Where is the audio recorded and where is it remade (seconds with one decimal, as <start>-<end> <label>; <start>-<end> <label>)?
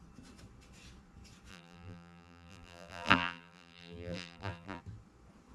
0.0-1.5 recorded; 1.5-4.8 remade; 4.8-5.5 recorded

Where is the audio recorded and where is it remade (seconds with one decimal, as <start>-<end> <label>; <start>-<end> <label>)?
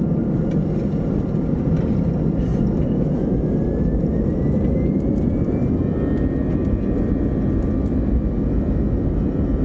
0.0-9.6 recorded